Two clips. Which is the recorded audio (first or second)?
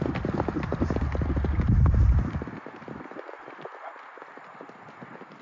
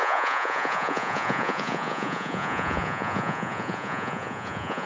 first